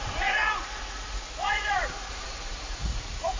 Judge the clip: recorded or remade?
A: remade